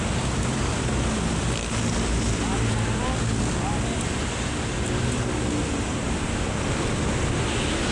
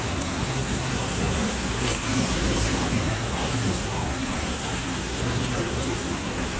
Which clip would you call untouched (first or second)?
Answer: first